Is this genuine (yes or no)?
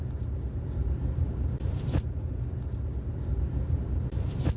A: yes